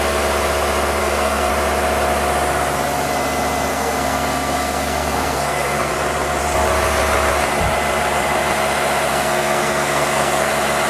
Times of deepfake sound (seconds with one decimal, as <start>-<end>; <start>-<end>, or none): 1.0-1.5; 3.7-5.9; 9.1-10.5